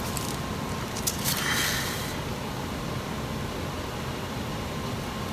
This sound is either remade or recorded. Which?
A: recorded